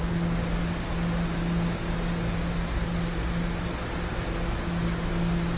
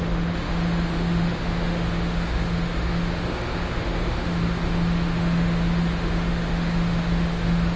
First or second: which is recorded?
first